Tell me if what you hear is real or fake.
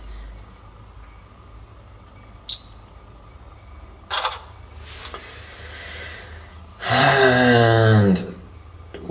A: real